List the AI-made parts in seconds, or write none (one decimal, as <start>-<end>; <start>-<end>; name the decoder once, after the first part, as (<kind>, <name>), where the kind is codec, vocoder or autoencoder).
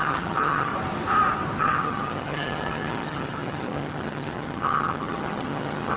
0.0-0.7 (vocoder, HiFi-GAN); 1.6-6.0